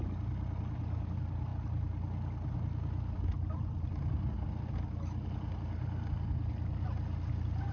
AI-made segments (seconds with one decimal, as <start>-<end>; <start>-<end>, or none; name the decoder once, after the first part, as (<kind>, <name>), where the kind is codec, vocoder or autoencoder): none